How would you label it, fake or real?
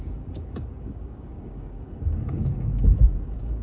fake